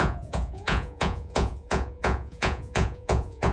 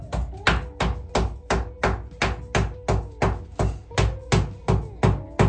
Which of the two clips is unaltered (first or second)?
second